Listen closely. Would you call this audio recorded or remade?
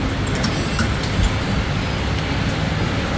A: recorded